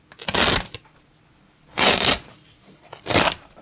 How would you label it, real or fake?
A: fake